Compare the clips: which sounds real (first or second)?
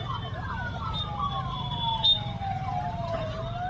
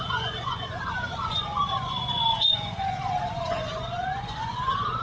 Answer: first